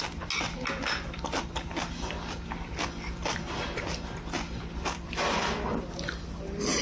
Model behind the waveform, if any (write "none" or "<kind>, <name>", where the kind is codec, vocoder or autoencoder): none